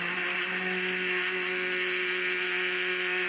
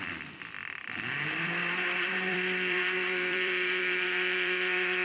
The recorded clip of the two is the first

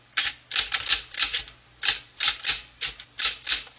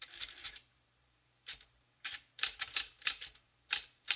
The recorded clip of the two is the first